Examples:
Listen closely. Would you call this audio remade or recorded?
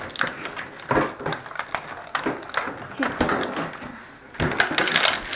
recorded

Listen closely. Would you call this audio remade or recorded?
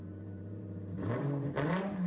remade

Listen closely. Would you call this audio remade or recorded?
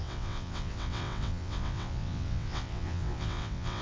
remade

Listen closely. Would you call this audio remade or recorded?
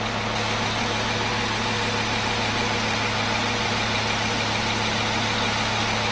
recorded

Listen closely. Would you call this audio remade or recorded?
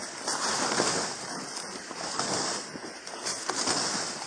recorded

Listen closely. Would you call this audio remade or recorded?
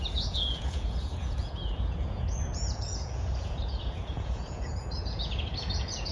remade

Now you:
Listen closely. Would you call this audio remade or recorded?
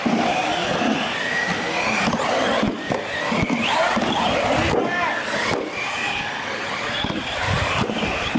recorded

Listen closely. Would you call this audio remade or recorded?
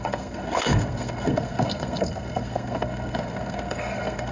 remade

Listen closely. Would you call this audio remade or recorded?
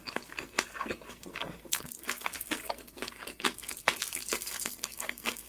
remade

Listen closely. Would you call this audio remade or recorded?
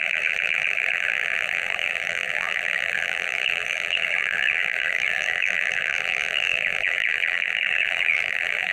remade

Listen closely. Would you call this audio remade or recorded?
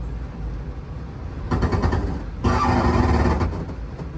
recorded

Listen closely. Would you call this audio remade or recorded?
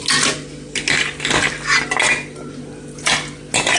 recorded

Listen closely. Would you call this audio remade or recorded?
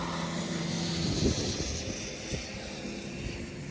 recorded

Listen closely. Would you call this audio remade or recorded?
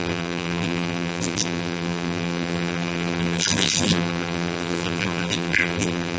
remade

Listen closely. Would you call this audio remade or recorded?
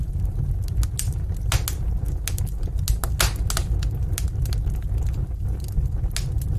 recorded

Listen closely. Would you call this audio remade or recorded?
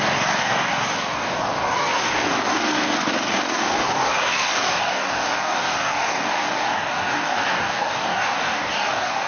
remade